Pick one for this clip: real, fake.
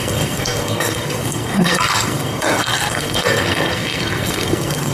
fake